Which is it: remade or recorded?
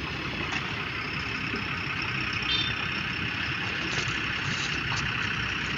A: recorded